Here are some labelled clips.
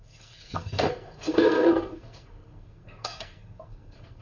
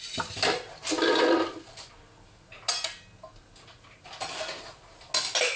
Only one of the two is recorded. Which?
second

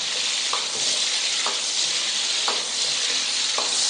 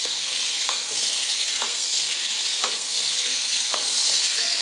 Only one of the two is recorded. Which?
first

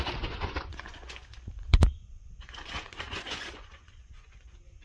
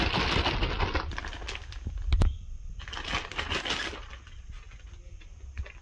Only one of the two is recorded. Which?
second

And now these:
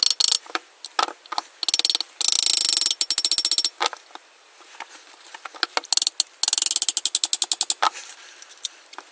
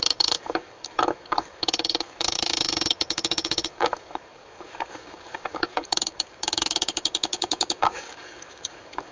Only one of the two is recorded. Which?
first